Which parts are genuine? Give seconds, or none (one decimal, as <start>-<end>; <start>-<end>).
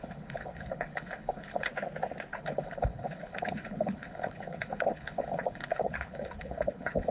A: 1.7-2.3